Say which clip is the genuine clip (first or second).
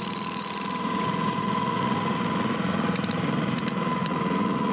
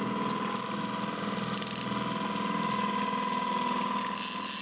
second